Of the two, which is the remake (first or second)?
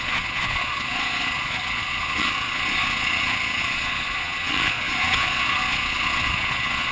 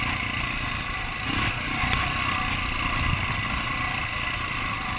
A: first